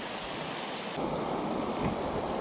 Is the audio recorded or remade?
recorded